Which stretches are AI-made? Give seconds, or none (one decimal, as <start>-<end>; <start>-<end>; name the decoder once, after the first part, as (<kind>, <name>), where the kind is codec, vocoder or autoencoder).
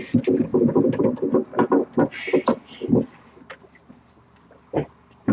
none